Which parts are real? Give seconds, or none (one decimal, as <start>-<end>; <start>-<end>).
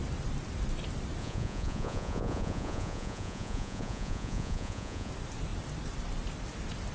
0.0-1.2; 5.1-6.9